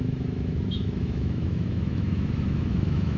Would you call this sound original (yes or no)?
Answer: no